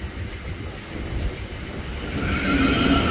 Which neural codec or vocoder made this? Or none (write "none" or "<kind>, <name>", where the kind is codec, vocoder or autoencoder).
none